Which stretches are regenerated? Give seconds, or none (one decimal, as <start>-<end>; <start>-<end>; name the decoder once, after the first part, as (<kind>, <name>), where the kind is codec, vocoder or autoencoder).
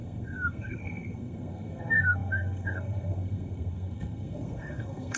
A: 0.0-5.2 (codec, SNAC)